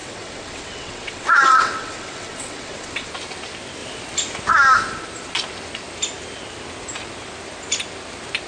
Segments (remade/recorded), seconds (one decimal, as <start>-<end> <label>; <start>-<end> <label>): 0.0-3.1 remade; 3.1-8.5 recorded